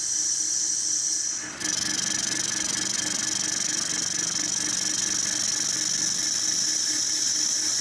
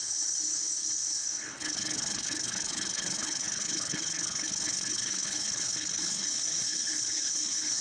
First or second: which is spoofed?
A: second